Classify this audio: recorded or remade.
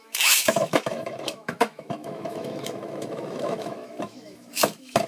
remade